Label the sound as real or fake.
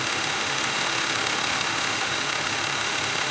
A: fake